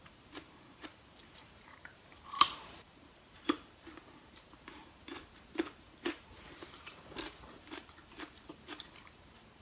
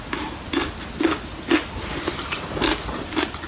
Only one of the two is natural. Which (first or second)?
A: second